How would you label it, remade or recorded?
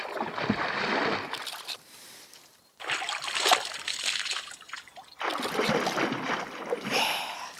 recorded